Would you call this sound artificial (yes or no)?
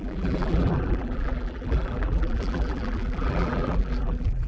yes